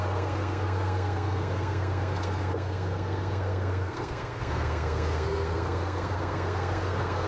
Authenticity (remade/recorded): remade